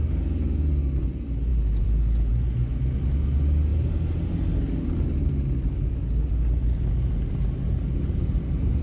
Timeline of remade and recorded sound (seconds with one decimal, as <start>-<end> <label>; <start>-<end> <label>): 0.0-8.8 recorded